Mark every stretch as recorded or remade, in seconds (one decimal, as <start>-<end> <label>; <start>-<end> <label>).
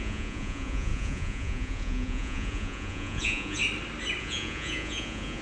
0.0-3.6 remade; 3.6-4.2 recorded; 4.2-5.4 remade